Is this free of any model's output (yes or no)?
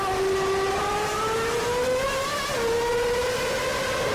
yes